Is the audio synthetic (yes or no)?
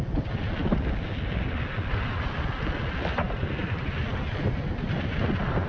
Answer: no